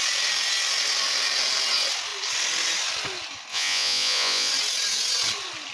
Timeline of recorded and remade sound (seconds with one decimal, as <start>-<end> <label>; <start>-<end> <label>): 0.0-3.5 recorded; 3.5-4.5 remade; 4.5-5.7 recorded